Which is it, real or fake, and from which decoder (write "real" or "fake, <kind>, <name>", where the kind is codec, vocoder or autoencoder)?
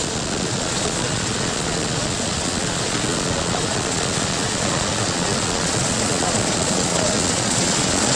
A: fake, vocoder, Vocos